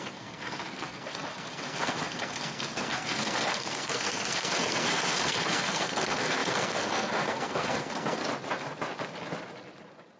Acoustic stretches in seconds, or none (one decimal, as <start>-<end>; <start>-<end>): 8.2-10.2